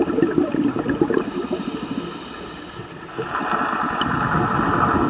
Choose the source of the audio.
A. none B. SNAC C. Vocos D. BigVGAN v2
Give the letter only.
A